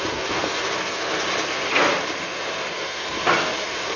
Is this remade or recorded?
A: recorded